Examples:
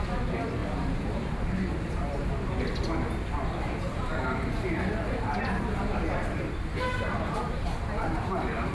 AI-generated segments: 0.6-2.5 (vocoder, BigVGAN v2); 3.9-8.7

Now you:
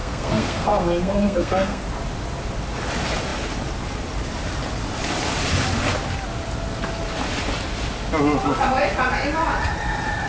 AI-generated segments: 0.0-1.8 (codec, SNAC)

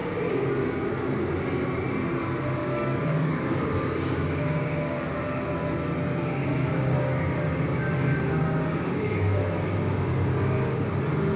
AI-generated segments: 2.6-5.2 (codec, DAC); 6.4-10.9

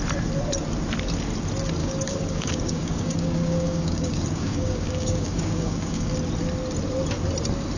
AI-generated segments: 1.8-6.1 (codec, DAC)

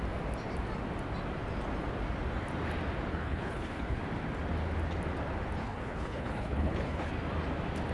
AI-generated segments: 3.1-4.0 (codec, HILCodec); 5.6-7.1

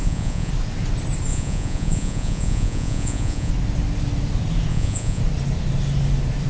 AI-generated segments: 0.0-0.5 (vocoder, Vocos); 1.3-3.5; 4.7-5.2